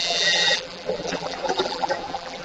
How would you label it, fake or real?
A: fake